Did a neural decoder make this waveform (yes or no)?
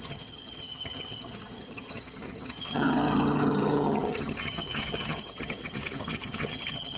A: yes